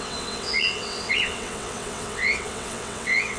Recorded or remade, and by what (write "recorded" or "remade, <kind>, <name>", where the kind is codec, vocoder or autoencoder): remade, vocoder, WaveNeXt